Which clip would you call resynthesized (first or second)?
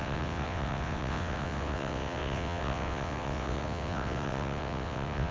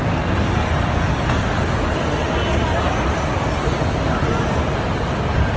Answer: first